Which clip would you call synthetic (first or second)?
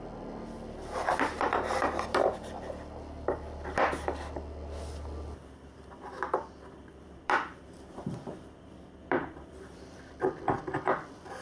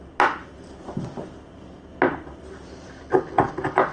first